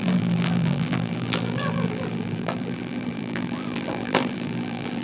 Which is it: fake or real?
fake